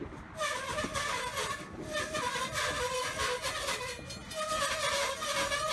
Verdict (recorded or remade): recorded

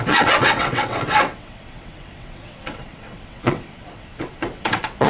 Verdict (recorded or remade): remade